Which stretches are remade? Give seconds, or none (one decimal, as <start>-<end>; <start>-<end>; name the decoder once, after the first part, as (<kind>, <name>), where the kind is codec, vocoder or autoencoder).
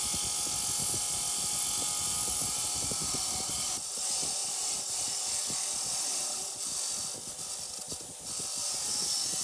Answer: 2.3-3.7 (vocoder, BigVGAN v2); 8.6-9.4